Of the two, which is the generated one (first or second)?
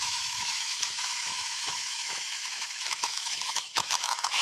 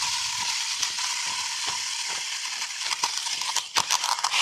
first